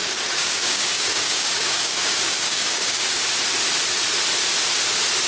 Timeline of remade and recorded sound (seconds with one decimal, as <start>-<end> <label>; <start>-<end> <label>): 0.0-3.2 remade; 3.2-5.3 recorded